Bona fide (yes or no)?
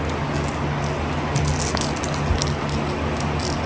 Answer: yes